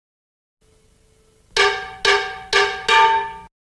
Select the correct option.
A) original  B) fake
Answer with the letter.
A